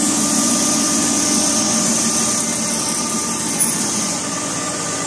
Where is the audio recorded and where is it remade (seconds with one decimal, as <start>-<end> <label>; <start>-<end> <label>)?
0.0-1.9 remade; 1.9-3.5 recorded; 3.5-5.1 remade